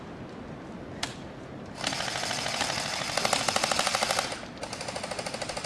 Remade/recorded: recorded